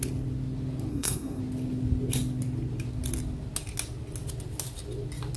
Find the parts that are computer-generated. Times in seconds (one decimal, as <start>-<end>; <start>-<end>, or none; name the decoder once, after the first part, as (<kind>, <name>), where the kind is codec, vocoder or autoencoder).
0.9-1.4 (codec, SNAC)